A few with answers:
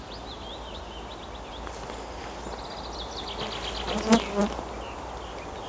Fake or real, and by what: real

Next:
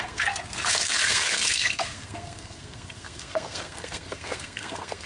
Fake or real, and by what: fake, codec, SNAC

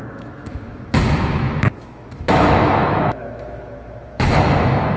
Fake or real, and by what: fake, autoencoder, DAC-VAE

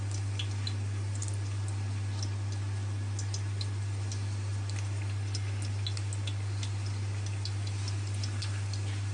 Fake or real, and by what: real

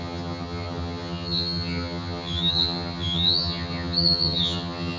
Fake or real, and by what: fake, vocoder, HiFi-GAN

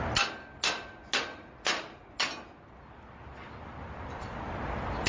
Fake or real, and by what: real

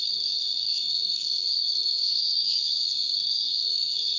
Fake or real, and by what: fake, codec, SNAC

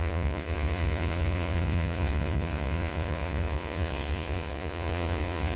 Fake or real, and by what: fake, vocoder, Vocos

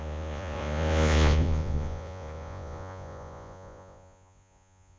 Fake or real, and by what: fake, vocoder, Vocos